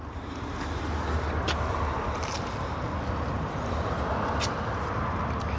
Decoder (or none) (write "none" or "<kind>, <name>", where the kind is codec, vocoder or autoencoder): none